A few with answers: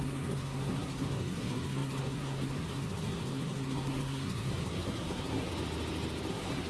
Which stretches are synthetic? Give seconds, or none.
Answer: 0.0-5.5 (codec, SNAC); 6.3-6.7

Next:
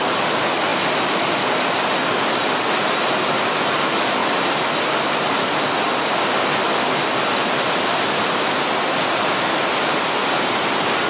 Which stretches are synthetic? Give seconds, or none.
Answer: none

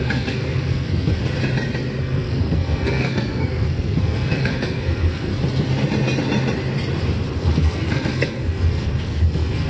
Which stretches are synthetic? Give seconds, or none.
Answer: 0.0-1.2 (codec, SNAC); 2.0-5.3; 7.4-9.7

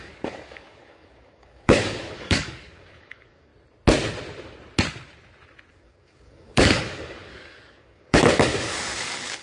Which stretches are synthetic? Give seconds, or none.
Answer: 0.0-3.5 (codec, DAC); 5.7-9.4